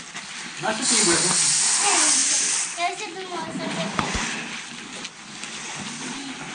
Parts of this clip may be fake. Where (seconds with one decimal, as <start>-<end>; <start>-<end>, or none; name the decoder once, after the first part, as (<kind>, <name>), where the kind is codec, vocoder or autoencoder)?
2.2-4.6 (vocoder, BigVGAN v2)